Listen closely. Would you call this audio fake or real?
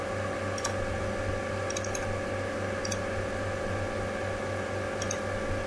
real